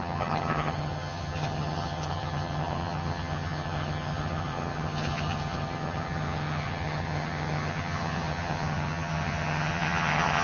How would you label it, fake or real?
fake